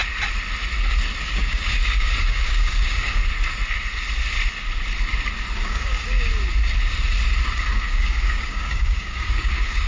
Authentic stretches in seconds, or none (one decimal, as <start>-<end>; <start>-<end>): 0.0-1.2; 3.2-5.6; 6.3-7.5

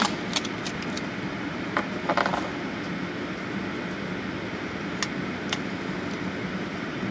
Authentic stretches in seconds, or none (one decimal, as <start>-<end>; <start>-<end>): 0.0-7.1

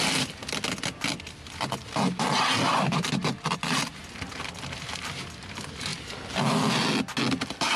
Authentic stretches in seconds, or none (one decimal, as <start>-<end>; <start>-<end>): 0.0-7.8